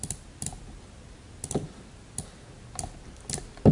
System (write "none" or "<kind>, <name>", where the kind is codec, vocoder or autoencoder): none